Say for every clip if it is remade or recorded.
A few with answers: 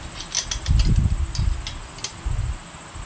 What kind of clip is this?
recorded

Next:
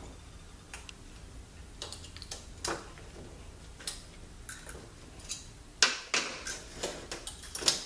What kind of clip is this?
recorded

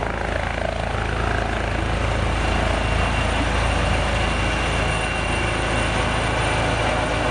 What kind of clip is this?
recorded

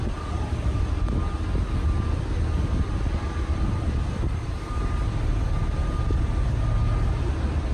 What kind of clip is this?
recorded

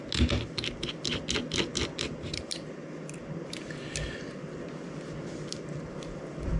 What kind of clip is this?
recorded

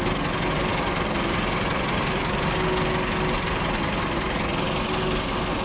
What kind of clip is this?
recorded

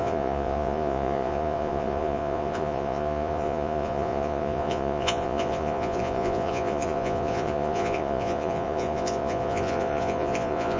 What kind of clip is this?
remade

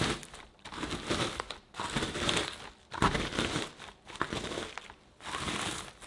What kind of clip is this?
recorded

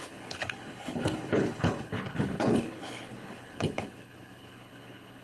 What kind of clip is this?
remade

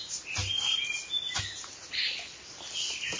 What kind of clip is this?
recorded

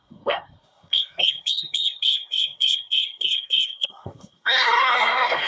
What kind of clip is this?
remade